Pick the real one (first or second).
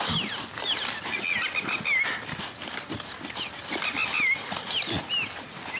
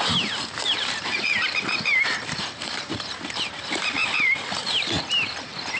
first